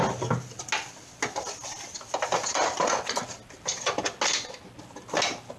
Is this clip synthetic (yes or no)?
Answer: no